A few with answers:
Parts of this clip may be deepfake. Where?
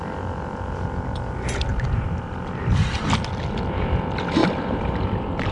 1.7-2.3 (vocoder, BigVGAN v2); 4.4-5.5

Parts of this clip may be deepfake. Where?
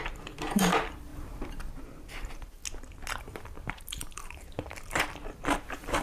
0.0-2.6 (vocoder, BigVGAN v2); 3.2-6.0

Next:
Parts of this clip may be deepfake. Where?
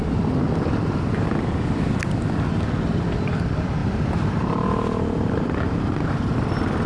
3.8-6.1 (vocoder, BigVGAN v2)